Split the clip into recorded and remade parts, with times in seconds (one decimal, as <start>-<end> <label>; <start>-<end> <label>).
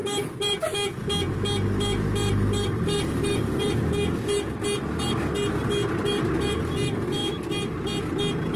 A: 0.0-0.6 remade; 0.6-2.2 recorded; 2.2-3.8 remade; 3.8-8.6 recorded